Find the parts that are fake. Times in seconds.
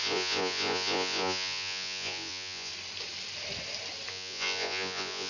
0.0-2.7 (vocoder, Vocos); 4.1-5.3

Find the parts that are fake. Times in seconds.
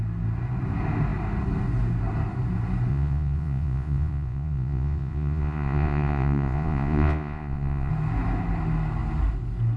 2.9-7.9 (vocoder, Vocos)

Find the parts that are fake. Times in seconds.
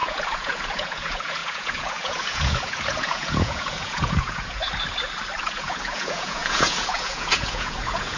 0.0-4.6 (vocoder, Vocos); 5.4-8.2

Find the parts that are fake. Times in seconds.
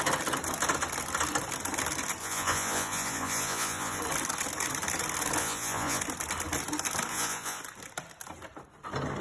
2.2-4.0 (vocoder, Vocos); 5.4-6.0; 7.1-7.6